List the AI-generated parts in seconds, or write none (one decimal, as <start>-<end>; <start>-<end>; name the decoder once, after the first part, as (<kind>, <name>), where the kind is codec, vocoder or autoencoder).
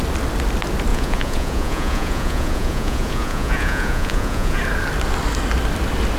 0.9-4.6 (vocoder, Vocos)